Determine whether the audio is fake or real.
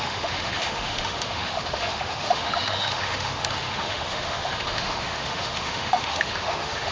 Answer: fake